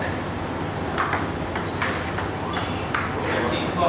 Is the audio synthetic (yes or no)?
no